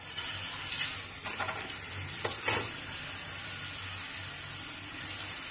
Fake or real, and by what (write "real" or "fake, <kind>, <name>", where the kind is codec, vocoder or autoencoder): real